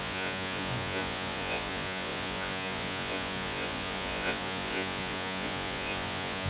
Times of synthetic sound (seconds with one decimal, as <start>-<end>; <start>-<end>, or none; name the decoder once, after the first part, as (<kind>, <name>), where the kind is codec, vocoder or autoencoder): 0.0-6.5 (vocoder, Vocos)